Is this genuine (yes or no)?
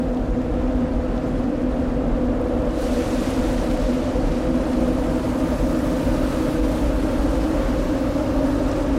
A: yes